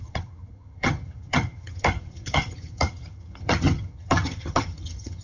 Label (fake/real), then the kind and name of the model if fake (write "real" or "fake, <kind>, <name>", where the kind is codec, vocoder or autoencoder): fake, vocoder, HiFi-GAN